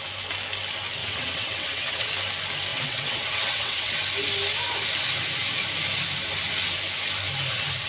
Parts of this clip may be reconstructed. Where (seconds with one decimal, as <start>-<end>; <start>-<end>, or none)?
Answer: 1.0-2.1; 2.7-3.9